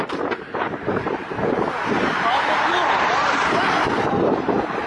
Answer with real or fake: fake